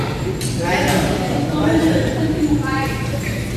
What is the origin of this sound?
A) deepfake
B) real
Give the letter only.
A